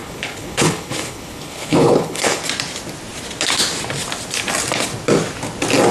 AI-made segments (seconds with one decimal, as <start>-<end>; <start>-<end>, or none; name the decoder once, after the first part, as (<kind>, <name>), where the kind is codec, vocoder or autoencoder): 0.0-2.4 (codec, HILCodec)